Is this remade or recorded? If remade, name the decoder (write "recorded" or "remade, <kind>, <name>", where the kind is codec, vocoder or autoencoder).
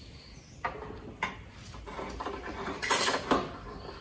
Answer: recorded